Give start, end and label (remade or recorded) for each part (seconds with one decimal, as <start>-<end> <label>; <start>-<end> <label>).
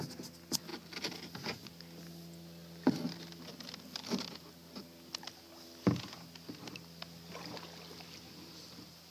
0.0-9.1 recorded